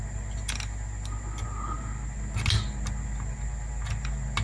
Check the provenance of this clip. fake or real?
real